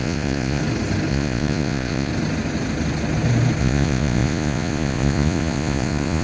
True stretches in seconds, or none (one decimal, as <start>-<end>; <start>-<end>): 0.6-1.1; 2.1-3.6